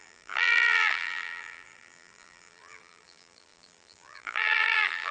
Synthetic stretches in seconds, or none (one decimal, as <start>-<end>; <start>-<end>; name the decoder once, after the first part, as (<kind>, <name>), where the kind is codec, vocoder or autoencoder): 0.0-5.1 (vocoder, BigVGAN v2)